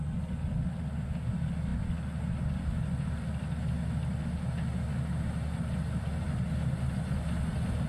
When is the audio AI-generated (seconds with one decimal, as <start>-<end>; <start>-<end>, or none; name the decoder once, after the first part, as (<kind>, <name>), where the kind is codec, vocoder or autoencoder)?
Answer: none